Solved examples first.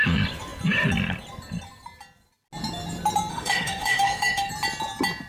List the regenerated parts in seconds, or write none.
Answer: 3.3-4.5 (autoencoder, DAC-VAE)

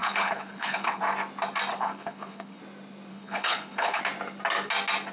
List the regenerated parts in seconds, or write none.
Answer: 0.0-1.0 (codec, HILCodec); 1.7-2.6; 3.1-4.0